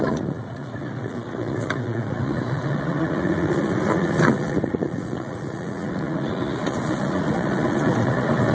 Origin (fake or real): fake